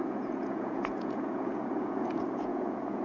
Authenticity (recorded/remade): remade